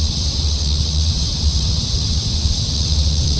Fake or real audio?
fake